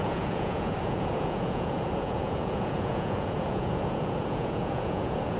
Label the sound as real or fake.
fake